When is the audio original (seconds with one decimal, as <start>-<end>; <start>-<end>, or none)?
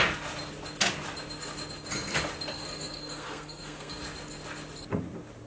0.0-2.5; 4.0-5.5